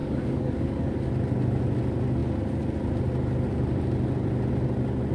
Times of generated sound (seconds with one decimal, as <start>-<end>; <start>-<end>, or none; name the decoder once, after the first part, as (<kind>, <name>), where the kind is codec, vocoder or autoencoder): 0.0-1.1 (codec, DAC)